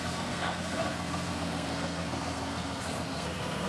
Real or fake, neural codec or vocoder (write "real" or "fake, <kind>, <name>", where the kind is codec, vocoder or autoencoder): fake, codec, SNAC